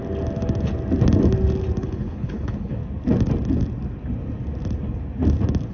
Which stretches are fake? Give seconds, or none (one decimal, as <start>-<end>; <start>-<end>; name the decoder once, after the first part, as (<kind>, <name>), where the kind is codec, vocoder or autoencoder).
1.8-2.8 (codec, HILCodec)